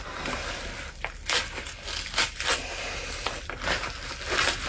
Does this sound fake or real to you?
real